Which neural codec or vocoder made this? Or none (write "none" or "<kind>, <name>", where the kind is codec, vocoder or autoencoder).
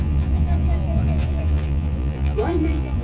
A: vocoder, Vocos